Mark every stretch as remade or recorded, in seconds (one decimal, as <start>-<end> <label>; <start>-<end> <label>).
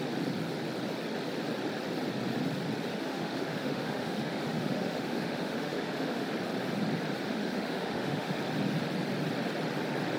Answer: 0.0-2.9 recorded; 2.9-6.3 remade; 6.3-7.3 recorded; 7.3-8.4 remade; 8.4-10.2 recorded